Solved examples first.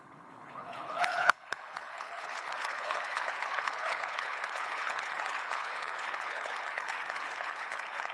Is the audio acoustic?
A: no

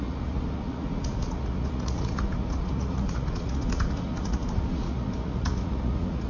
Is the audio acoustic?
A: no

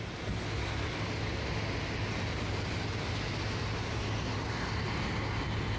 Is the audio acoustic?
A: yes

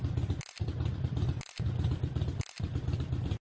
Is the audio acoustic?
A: yes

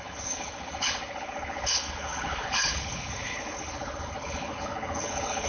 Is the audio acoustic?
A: no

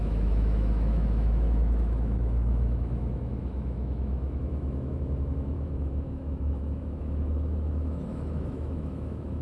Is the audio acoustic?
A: no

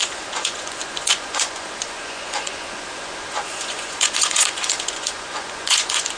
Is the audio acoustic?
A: no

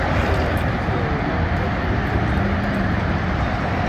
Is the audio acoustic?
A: yes